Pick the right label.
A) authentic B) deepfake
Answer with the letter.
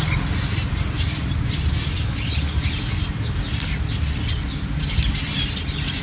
A